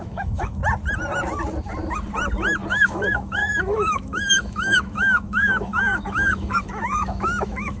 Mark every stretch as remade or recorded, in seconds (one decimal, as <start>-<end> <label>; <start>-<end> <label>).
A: 0.0-0.6 remade; 0.6-2.7 recorded; 2.7-7.8 remade